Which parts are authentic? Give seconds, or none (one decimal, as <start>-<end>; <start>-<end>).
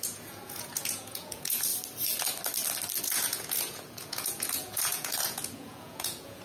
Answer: 1.7-3.0